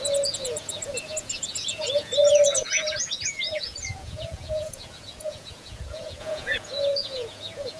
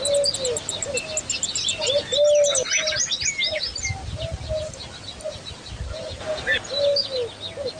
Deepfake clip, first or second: first